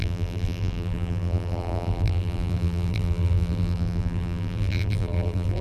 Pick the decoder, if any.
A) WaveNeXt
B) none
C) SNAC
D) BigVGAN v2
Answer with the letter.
D